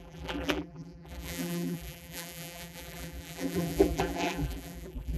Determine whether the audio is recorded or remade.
remade